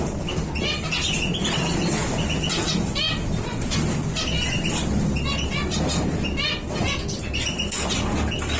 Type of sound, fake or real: real